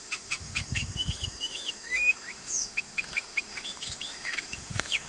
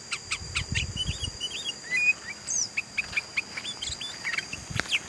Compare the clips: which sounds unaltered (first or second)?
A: second